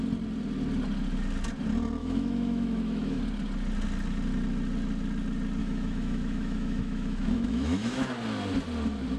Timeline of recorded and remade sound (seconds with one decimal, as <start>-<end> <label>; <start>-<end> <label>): 0.0-2.0 recorded; 2.0-3.2 remade; 3.2-5.6 recorded; 5.6-8.1 remade; 8.1-9.2 recorded